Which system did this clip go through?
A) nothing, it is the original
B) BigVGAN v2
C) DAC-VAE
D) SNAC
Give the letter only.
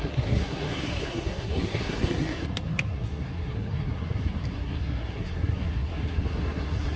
D